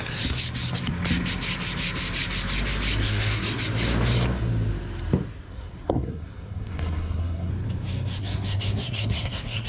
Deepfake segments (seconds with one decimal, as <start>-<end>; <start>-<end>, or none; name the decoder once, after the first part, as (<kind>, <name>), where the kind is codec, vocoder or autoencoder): 3.0-3.6 (codec, SNAC); 5.5-7.5; 8.2-9.7